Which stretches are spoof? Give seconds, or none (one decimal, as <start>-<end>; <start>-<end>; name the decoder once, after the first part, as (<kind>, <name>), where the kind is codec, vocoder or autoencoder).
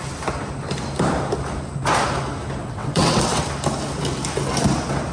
2.6-3.4 (vocoder, WaveNeXt)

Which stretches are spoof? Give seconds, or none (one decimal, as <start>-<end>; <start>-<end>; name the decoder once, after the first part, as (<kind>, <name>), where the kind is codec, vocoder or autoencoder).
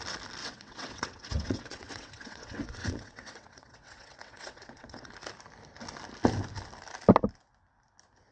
0.4-5.1 (vocoder, WaveNeXt)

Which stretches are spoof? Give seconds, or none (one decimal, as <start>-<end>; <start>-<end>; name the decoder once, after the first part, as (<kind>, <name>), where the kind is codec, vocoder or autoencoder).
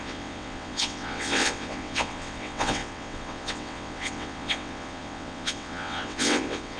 0.0-6.8 (vocoder, WaveNeXt)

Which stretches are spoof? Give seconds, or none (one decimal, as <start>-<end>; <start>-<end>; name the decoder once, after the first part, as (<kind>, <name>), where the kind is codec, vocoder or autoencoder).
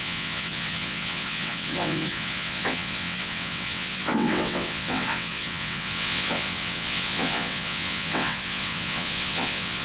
0.0-9.8 (vocoder, WaveNeXt)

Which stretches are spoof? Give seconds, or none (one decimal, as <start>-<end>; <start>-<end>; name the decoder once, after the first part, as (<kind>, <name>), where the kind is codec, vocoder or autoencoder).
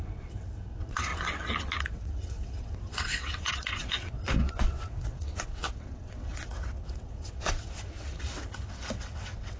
0.0-1.1 (vocoder, WaveNeXt); 1.8-9.6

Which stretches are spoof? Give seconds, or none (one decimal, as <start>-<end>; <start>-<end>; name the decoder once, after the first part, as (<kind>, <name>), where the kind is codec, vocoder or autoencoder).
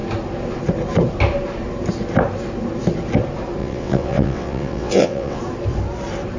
3.6-5.4 (vocoder, WaveNeXt)